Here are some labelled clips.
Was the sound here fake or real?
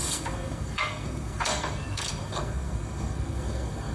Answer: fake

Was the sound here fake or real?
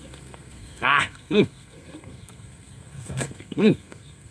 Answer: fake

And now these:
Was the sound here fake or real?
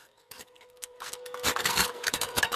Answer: fake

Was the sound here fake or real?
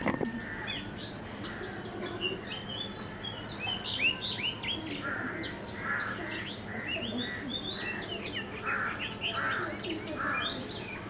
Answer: real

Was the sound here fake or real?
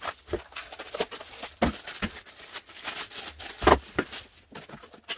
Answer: real